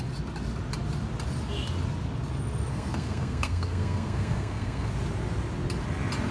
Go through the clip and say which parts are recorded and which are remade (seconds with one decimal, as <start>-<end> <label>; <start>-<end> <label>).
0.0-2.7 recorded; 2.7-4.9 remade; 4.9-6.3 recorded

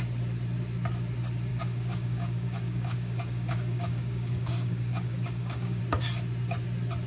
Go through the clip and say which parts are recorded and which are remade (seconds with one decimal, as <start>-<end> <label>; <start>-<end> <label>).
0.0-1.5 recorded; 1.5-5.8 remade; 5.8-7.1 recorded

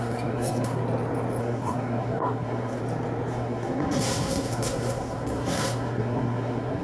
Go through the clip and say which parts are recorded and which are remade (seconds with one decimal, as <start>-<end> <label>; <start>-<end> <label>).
0.0-0.8 remade; 0.8-1.4 recorded; 1.4-2.8 remade; 2.8-3.3 recorded; 3.3-6.8 remade

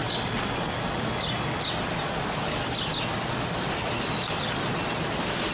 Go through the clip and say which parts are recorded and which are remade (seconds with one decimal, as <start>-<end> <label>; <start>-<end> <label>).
0.0-5.5 recorded

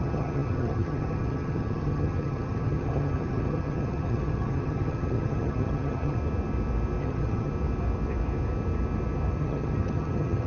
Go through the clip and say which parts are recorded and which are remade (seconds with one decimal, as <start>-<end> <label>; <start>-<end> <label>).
0.0-6.2 remade; 6.2-7.0 recorded; 7.0-7.5 remade; 7.5-9.4 recorded; 9.4-10.5 remade

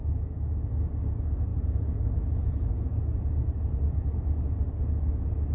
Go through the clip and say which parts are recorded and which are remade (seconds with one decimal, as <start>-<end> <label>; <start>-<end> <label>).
0.0-0.8 remade; 0.8-5.5 recorded